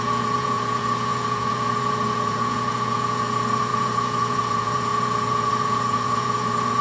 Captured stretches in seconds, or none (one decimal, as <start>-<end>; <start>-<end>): none